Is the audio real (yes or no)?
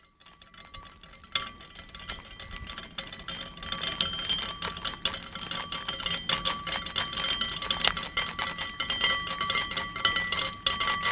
yes